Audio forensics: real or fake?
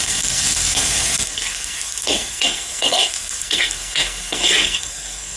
fake